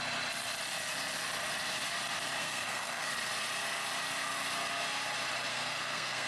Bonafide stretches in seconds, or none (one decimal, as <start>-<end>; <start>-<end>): 0.0-2.4; 3.1-5.5